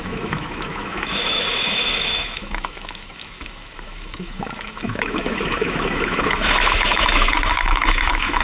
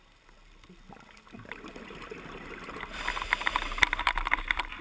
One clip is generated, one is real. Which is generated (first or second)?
first